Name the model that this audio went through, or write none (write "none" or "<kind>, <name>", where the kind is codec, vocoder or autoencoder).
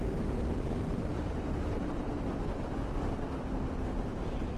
none